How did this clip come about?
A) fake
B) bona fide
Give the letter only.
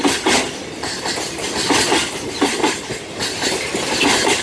B